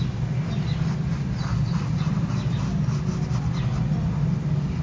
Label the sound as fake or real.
real